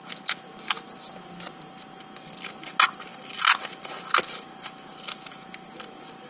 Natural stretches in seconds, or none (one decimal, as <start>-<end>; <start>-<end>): 0.0-6.3